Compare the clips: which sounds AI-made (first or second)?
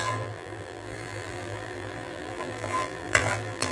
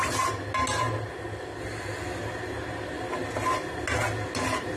first